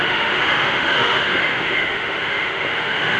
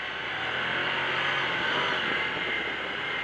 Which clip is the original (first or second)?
second